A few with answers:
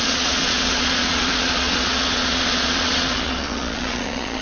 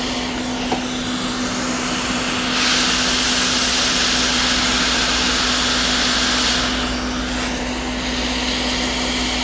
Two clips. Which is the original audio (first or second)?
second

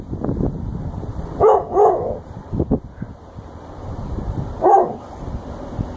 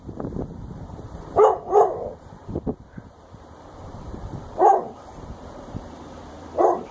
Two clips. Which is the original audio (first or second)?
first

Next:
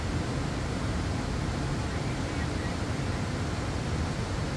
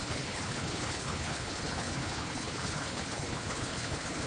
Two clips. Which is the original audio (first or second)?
first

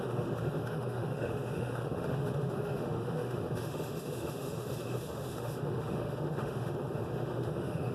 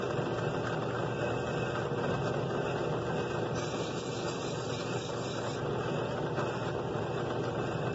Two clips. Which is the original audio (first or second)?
second